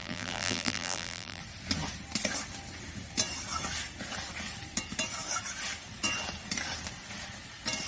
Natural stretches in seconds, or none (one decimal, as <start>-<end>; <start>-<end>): 1.4-7.9